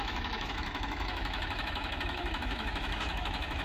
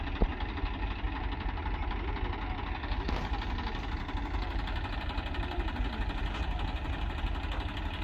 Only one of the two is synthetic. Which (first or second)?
first